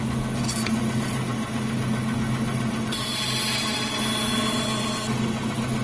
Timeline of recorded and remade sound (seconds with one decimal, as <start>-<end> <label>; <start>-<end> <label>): 0.0-5.8 recorded